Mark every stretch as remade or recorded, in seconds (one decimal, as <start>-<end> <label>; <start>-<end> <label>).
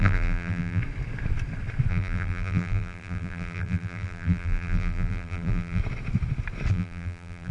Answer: 0.0-0.8 remade; 0.8-1.9 recorded; 1.9-5.8 remade; 5.8-6.7 recorded; 6.7-7.5 remade